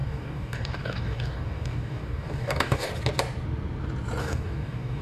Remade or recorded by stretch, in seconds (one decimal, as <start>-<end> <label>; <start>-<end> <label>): 0.0-2.9 remade; 2.9-4.2 recorded; 4.2-5.0 remade